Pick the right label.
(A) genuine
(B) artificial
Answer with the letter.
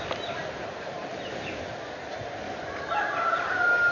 A